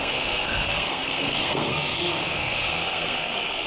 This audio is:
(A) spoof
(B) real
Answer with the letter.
A